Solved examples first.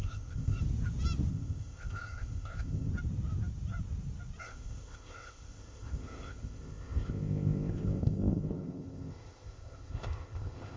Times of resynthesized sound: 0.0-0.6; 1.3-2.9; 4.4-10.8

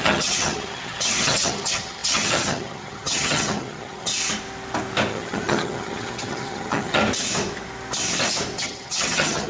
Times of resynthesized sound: 0.0-4.1; 5.1-7.0; 8.6-9.5

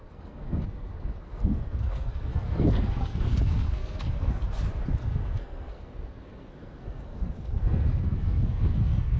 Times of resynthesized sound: 0.0-4.4; 4.9-9.2

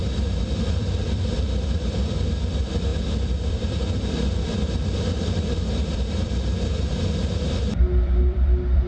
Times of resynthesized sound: 0.0-8.9

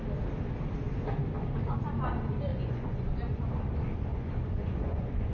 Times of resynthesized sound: 2.5-3.5; 4.1-5.3